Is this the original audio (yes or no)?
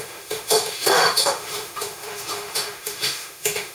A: no